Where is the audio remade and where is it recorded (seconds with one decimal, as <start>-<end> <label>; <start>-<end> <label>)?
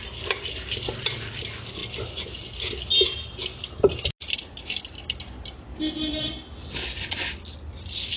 0.0-8.2 recorded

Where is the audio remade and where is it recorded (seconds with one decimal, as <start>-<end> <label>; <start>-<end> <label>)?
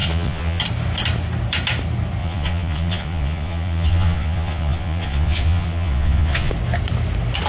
0.0-0.6 remade; 0.6-2.2 recorded; 2.2-6.5 remade; 6.5-7.5 recorded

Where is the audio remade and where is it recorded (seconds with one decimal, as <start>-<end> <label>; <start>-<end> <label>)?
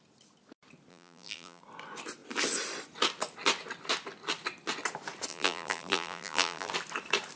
0.0-0.9 recorded; 0.9-1.6 remade; 1.6-5.3 recorded; 5.3-6.7 remade; 6.7-7.4 recorded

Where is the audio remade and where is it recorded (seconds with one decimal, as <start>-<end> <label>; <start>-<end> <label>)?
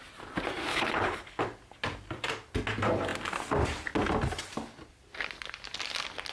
0.0-0.7 recorded; 0.7-1.4 remade; 1.4-6.3 recorded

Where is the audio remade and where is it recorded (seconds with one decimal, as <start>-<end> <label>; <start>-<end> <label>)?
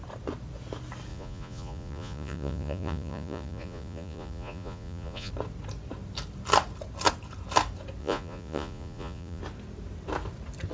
0.0-1.1 recorded; 1.1-5.3 remade; 5.3-8.0 recorded; 8.0-9.4 remade; 9.4-10.7 recorded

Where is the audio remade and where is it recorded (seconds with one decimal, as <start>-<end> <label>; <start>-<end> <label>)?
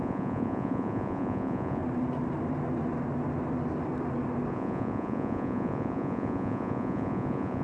0.0-1.8 remade; 1.8-4.5 recorded; 4.5-7.6 remade